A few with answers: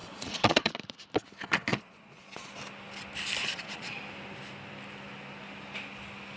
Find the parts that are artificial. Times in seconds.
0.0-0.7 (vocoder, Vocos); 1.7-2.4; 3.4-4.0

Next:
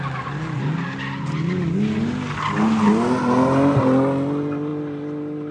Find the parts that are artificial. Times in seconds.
none

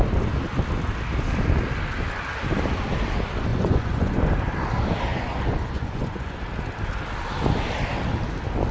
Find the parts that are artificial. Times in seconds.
3.5-4.2 (vocoder, Vocos); 5.1-6.4